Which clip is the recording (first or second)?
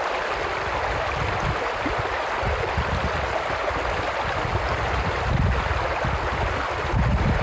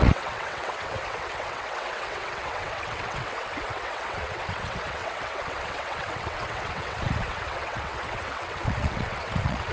first